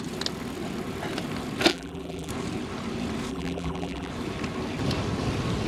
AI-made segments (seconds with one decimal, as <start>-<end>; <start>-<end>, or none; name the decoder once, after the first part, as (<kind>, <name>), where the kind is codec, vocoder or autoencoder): 1.7-2.3 (vocoder, BigVGAN v2); 3.3-4.1